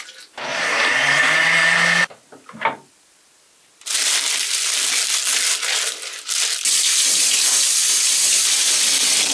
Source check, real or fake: real